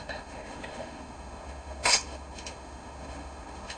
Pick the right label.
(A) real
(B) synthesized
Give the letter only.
B